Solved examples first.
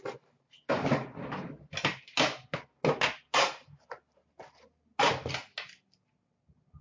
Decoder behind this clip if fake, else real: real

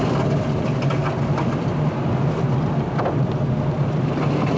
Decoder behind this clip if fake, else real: real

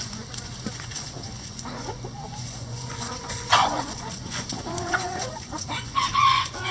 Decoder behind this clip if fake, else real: fake, vocoder, Vocos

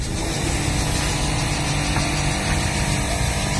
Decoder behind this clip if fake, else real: real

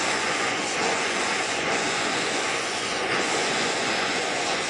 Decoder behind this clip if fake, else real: fake, vocoder, Vocos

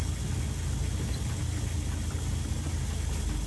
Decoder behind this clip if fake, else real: real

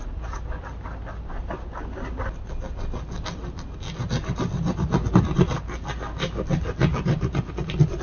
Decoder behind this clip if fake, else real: real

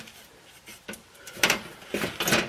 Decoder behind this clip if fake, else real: real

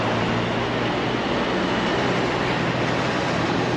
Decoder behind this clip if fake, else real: real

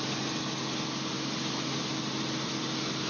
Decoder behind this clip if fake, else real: real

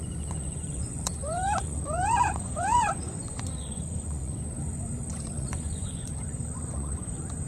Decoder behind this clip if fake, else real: fake, vocoder, Vocos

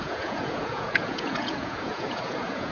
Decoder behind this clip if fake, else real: fake, vocoder, Vocos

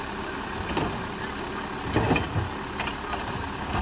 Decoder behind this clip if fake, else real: real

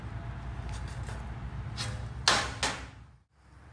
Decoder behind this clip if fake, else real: real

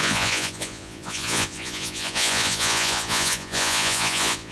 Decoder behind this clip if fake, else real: fake, vocoder, Vocos